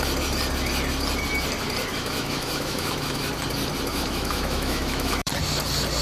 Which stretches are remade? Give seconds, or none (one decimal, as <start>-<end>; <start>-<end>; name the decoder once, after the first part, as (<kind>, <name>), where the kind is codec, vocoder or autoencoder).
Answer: 1.9-3.3 (autoencoder, DAC-VAE); 3.9-5.3